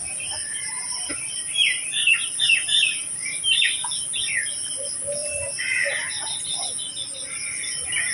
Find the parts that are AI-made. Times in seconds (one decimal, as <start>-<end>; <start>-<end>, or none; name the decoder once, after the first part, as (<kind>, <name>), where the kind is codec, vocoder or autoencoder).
0.5-3.6 (vocoder, BigVGAN v2); 5.2-6.1